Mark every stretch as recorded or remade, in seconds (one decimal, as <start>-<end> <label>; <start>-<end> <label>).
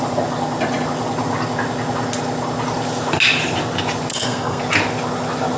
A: 0.0-4.1 recorded; 4.1-4.6 remade; 4.6-5.6 recorded